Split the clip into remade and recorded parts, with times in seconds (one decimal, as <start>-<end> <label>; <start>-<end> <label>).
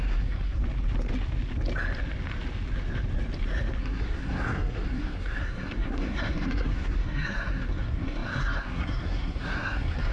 0.0-0.6 remade; 0.6-3.8 recorded; 3.8-10.1 remade